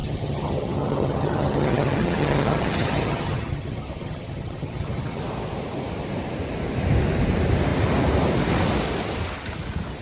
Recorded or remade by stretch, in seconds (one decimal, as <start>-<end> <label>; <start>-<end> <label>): 0.0-5.2 remade; 5.2-10.0 recorded

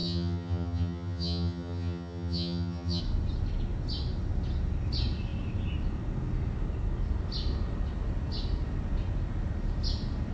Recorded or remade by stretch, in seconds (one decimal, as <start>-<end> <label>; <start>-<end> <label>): 0.0-3.0 remade; 3.0-10.3 recorded

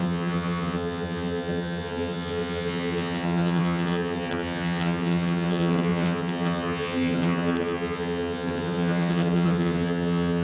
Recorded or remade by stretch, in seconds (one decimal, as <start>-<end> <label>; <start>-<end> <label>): 0.0-10.4 remade

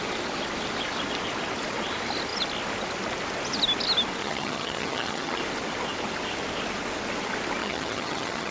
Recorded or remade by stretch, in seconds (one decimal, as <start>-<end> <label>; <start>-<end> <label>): 0.0-4.2 recorded; 4.2-5.4 remade; 5.4-7.6 recorded; 7.6-8.5 remade

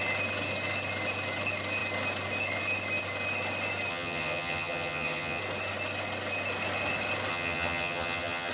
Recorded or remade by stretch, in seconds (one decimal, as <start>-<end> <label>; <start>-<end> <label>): 0.0-3.9 recorded; 3.9-5.4 remade; 5.4-7.3 recorded; 7.3-8.5 remade